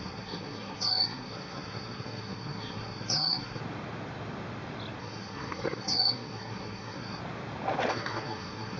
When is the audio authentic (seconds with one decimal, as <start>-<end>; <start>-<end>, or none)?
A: 3.6-5.0; 7.2-7.9